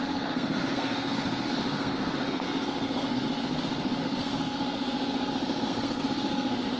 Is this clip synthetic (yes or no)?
yes